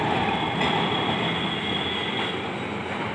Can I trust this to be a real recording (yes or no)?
yes